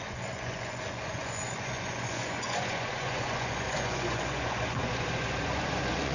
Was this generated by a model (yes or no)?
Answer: yes